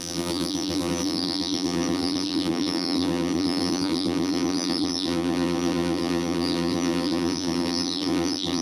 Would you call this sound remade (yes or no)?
yes